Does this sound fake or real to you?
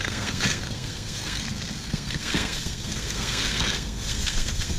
fake